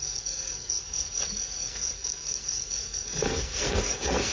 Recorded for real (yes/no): no